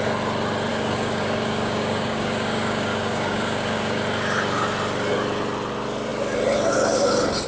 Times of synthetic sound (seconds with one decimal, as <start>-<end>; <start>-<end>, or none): 0.7-4.0